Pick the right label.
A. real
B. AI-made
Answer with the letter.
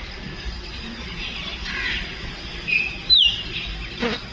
A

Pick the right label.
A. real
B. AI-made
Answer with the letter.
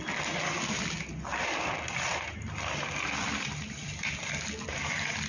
A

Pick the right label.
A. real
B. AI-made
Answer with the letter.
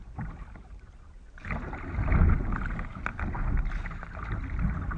A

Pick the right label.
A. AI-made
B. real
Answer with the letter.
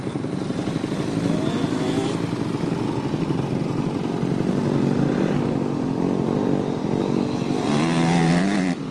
B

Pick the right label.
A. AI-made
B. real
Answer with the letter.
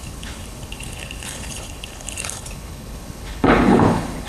A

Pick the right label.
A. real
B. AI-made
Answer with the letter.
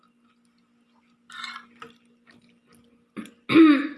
A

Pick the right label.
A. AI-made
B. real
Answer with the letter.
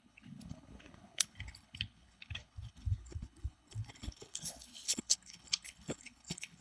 A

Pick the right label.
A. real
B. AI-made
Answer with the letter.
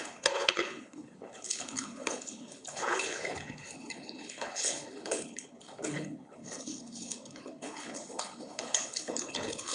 B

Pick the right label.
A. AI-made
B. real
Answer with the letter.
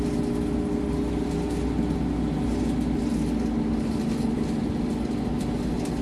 B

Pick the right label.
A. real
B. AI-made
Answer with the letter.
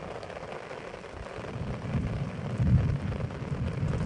A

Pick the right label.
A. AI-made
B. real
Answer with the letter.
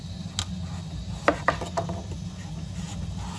B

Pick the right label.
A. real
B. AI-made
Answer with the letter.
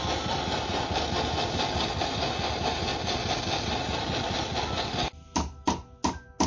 A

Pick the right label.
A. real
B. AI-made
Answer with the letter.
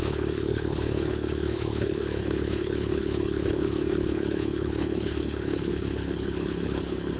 B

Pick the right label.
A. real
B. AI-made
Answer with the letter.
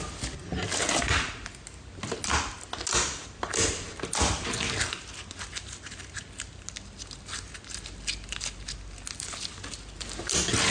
A